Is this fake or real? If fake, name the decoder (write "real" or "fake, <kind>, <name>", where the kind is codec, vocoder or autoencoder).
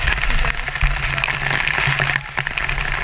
real